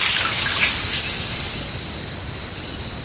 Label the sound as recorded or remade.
recorded